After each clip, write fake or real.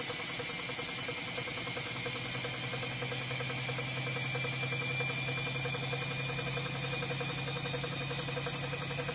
real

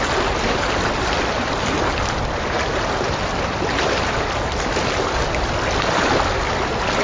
real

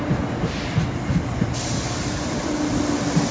real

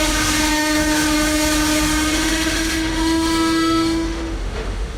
fake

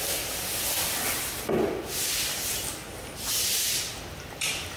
real